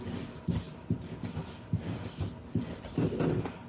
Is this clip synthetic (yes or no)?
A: no